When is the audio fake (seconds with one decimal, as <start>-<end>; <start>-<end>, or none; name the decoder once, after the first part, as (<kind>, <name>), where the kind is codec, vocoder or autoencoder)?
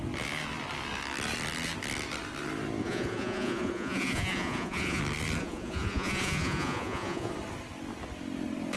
2.8-5.0 (vocoder, Vocos); 5.4-7.3